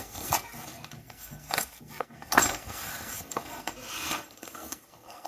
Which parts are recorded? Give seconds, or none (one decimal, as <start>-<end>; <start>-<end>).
none